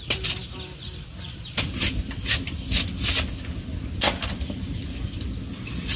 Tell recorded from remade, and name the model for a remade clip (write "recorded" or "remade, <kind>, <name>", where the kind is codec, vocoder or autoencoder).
recorded